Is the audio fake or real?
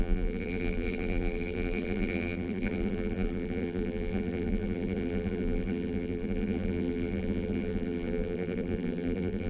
fake